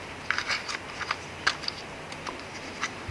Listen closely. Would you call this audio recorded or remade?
recorded